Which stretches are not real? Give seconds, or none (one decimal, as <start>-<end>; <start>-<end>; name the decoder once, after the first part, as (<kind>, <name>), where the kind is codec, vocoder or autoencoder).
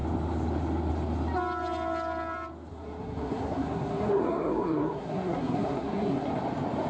2.7-6.3 (codec, SNAC)